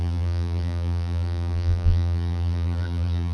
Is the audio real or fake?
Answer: fake